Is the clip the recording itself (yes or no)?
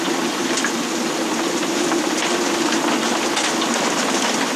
yes